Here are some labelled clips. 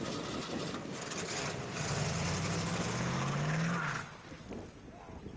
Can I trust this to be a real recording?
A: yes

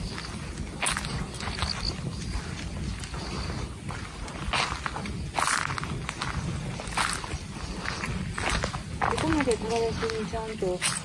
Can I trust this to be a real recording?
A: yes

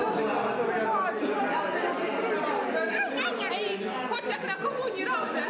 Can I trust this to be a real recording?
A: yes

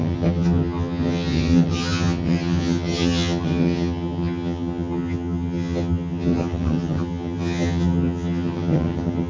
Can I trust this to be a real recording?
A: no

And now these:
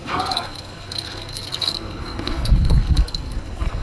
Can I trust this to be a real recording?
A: no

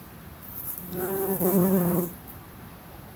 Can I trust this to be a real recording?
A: no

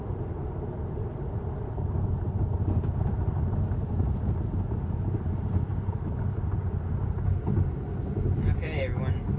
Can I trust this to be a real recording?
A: yes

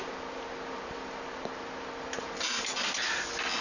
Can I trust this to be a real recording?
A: yes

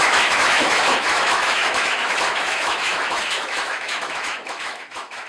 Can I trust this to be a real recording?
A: no